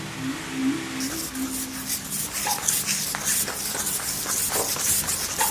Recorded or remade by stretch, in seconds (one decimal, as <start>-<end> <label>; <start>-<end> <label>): 0.0-5.5 recorded

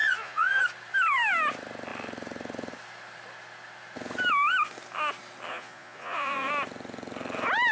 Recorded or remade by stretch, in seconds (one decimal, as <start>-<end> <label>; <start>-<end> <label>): 0.0-0.6 remade; 0.6-5.5 recorded; 5.5-6.5 remade; 6.5-7.7 recorded

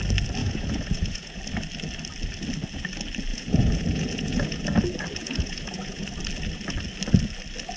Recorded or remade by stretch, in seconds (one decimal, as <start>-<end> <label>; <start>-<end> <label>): 0.0-0.4 recorded; 0.4-1.4 remade; 1.4-3.3 recorded; 3.3-4.6 remade; 4.6-5.2 recorded; 5.2-6.1 remade; 6.1-7.8 recorded

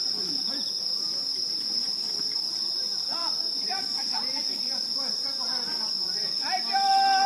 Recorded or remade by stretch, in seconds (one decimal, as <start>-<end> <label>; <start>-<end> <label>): 0.0-7.3 recorded